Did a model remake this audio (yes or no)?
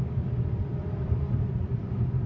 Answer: no